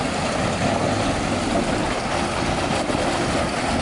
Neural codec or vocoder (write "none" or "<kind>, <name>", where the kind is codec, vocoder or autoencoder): none